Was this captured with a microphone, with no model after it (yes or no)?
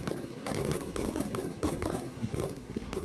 no